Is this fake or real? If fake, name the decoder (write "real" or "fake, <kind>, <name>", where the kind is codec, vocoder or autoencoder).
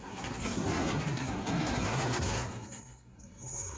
fake, codec, SNAC